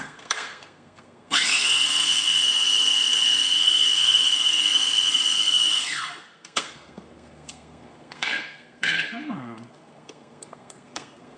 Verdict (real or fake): fake